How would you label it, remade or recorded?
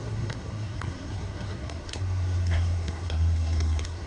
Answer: remade